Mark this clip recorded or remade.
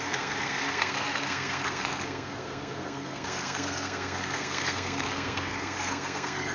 remade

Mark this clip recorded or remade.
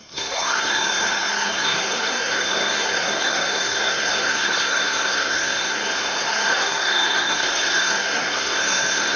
remade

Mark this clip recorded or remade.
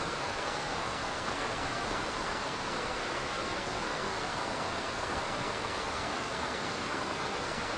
remade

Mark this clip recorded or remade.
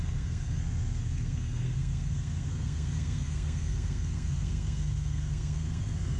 remade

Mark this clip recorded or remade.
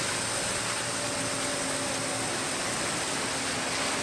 recorded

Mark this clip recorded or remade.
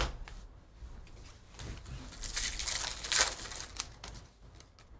recorded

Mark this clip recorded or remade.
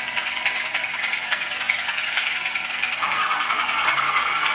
remade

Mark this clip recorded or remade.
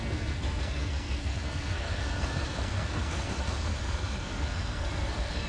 remade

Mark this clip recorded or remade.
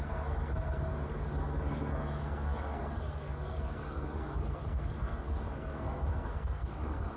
remade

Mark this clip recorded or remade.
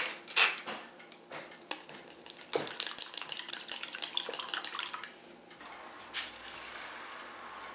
recorded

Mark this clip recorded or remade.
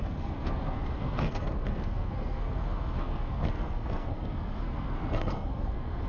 remade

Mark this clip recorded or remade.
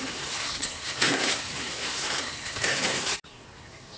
remade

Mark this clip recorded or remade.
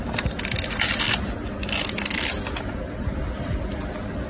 recorded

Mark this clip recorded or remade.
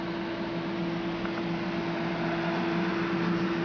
recorded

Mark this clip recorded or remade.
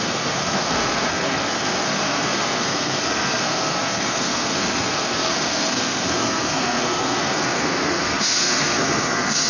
remade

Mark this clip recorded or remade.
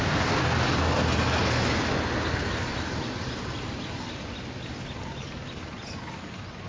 recorded